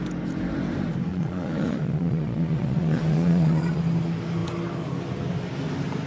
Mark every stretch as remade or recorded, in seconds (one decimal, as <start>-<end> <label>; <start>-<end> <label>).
0.0-1.1 recorded; 1.1-3.8 remade; 3.8-6.1 recorded